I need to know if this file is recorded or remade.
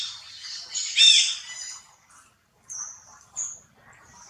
recorded